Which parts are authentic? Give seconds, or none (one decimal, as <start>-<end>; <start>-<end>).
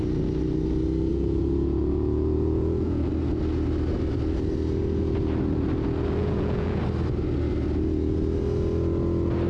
0.0-1.1; 3.1-6.2; 6.8-9.5